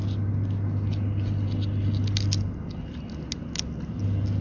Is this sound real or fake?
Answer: real